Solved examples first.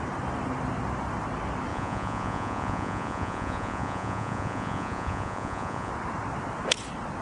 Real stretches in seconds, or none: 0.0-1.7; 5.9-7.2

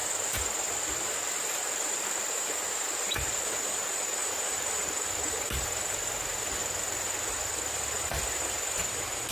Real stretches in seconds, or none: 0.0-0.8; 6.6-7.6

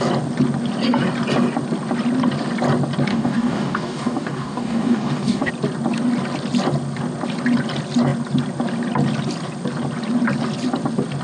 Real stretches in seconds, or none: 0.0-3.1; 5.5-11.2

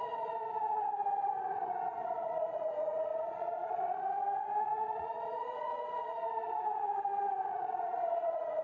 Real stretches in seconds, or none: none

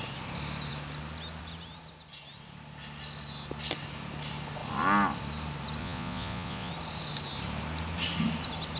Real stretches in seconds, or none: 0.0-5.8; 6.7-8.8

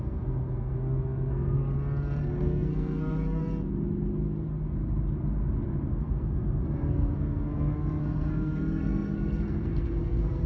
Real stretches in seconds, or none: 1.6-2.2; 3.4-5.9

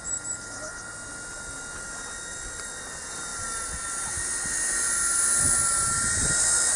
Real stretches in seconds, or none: 0.0-6.8

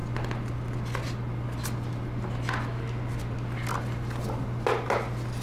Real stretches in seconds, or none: 0.0-5.4